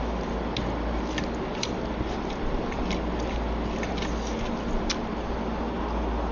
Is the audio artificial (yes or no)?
no